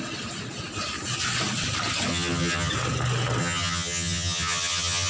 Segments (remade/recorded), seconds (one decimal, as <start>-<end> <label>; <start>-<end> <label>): 0.0-2.1 recorded; 2.1-2.7 remade; 2.7-3.4 recorded; 3.4-5.1 remade